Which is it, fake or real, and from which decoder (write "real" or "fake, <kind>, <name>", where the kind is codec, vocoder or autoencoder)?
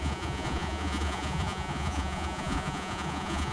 fake, vocoder, Vocos